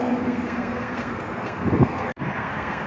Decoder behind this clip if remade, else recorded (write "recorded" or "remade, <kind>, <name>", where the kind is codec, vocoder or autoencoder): remade, codec, SNAC